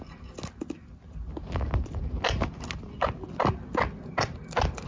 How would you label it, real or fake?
real